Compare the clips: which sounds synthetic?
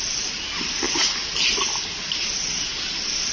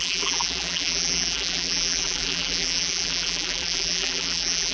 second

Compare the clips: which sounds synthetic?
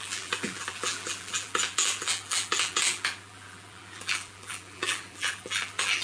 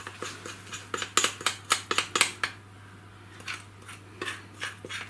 first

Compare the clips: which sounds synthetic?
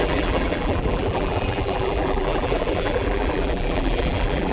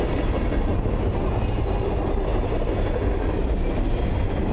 first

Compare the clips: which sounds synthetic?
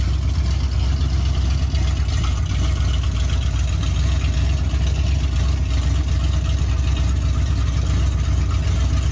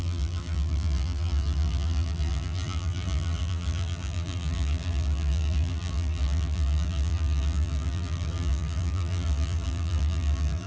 second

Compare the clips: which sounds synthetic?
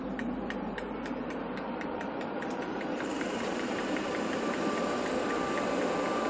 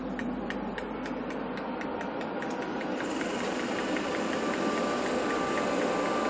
first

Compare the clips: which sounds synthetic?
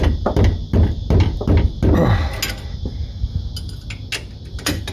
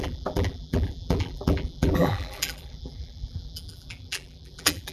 second